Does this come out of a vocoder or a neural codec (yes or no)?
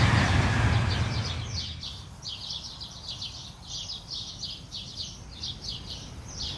no